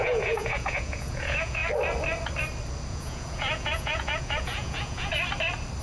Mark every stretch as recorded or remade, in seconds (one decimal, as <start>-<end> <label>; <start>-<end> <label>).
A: 0.0-1.6 remade; 1.6-2.9 recorded; 2.9-5.1 remade; 5.1-5.8 recorded